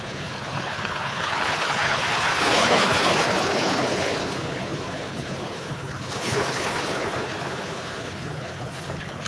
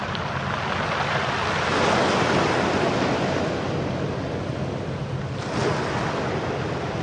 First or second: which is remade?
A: first